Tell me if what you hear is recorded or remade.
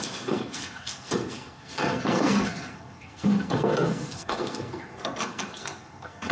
remade